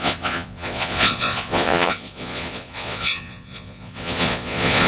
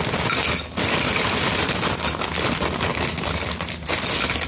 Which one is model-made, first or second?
first